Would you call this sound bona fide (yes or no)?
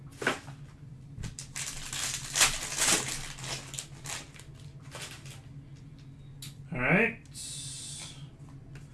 yes